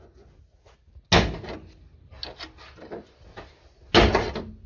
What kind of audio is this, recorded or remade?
recorded